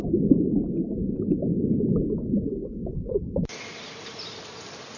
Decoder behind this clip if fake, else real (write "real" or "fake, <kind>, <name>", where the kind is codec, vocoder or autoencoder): real